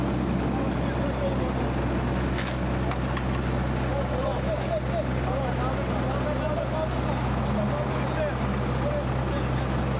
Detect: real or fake real